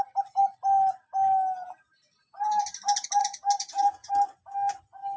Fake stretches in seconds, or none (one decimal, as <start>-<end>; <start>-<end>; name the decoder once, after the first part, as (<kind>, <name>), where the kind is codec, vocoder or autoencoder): 3.2-4.1 (vocoder, Vocos)

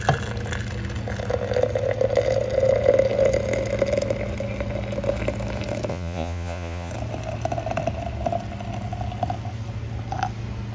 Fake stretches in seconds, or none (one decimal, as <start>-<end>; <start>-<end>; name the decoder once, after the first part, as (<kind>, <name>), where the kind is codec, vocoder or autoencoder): 5.9-6.9 (vocoder, Vocos)

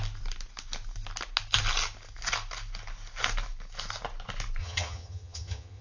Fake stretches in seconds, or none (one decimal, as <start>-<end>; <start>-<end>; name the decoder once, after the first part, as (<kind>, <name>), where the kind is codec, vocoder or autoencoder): 4.6-5.8 (vocoder, HiFi-GAN)

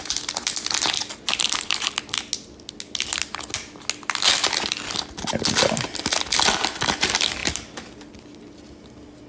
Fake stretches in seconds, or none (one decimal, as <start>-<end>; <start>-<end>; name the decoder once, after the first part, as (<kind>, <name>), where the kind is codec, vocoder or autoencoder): none

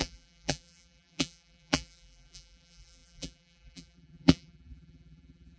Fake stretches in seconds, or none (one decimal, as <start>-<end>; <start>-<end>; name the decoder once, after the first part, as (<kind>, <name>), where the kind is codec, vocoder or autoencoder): 0.0-5.6 (vocoder, BigVGAN v2)

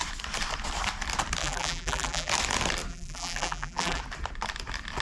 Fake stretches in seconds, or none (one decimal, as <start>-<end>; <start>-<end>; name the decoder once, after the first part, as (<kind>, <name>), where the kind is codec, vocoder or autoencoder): 1.4-2.3 (vocoder, BigVGAN v2); 2.9-4.0